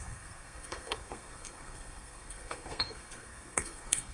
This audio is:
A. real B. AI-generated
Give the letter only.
B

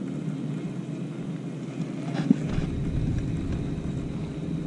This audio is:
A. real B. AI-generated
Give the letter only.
A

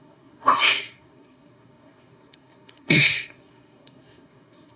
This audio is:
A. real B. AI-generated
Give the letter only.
B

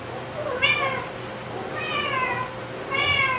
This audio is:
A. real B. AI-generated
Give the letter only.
A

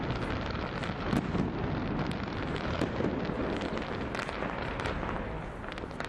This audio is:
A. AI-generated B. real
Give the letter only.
B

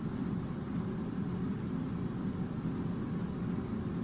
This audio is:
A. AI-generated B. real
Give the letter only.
B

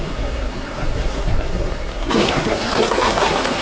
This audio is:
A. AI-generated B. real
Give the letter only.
A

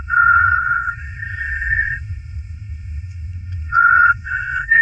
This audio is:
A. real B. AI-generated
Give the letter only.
B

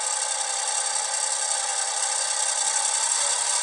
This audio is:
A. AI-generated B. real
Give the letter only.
B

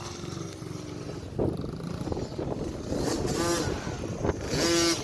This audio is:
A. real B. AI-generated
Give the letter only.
A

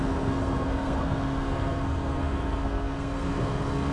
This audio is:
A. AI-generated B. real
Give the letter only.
A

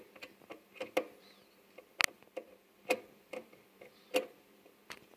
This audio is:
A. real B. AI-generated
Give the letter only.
A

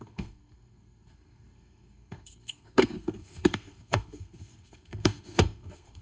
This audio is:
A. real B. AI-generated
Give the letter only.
B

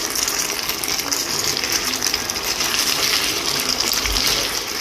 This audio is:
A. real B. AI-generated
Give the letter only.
A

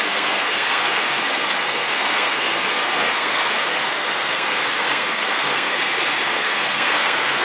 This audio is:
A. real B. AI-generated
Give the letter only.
B